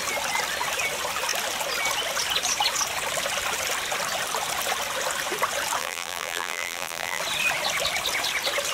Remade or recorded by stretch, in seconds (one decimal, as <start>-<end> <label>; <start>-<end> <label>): 0.0-5.8 recorded; 5.8-7.2 remade; 7.2-8.7 recorded